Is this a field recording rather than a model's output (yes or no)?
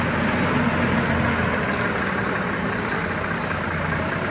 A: yes